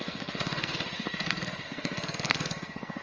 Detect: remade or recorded remade